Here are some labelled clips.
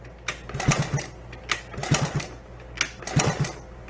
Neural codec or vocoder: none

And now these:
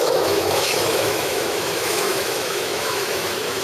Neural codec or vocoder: autoencoder, DAC-VAE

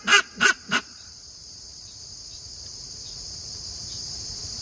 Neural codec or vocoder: vocoder, Vocos